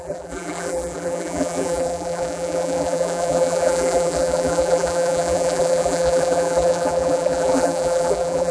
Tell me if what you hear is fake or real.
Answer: fake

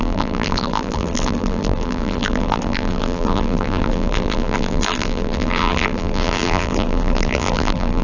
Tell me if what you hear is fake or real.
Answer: fake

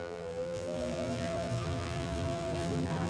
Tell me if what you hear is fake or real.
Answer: fake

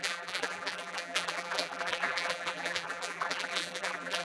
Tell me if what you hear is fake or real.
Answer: fake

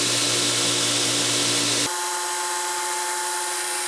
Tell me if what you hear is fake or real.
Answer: real